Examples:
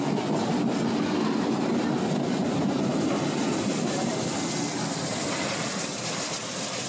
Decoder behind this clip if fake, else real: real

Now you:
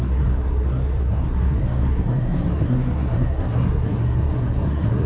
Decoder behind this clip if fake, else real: fake, codec, SNAC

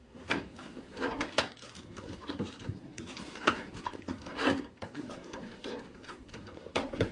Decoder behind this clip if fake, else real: fake, codec, SNAC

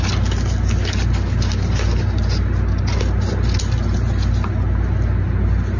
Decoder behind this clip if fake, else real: real